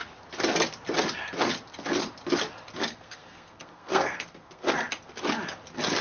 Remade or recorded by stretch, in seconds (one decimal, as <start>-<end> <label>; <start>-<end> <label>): 0.0-2.8 recorded; 2.8-4.7 remade; 4.7-6.0 recorded

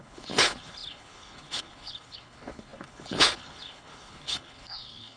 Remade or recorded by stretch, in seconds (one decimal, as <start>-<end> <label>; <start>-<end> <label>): 0.0-5.2 remade